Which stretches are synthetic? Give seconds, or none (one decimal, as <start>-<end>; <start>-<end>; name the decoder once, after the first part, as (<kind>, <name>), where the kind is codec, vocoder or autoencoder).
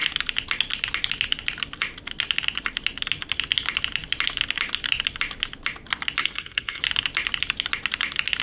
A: 6.2-6.8 (codec, SNAC)